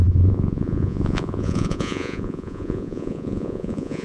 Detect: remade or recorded remade